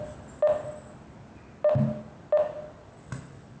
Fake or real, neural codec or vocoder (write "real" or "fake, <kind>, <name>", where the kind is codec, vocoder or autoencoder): real